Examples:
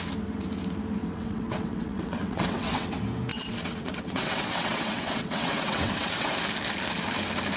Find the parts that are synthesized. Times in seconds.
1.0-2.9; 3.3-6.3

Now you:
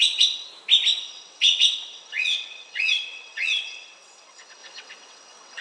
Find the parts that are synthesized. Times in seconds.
0.0-0.5; 1.0-5.6

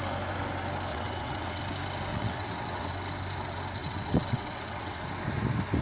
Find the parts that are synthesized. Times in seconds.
0.9-1.6; 2.1-2.9; 3.8-5.0

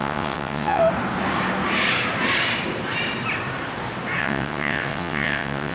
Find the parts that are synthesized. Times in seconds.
0.0-0.8; 4.2-5.7

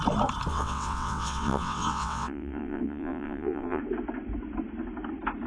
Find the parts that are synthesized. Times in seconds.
0.5-3.8

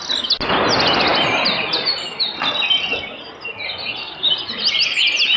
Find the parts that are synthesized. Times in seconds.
none

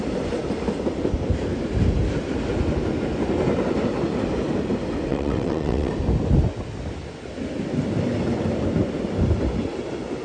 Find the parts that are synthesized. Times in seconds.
5.1-5.9